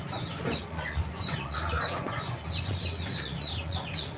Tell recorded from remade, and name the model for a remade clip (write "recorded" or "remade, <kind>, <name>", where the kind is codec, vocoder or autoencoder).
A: remade, vocoder, Vocos